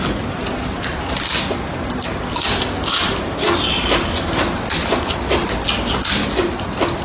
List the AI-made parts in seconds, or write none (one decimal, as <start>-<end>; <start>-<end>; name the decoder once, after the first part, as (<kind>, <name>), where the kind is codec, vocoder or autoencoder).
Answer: none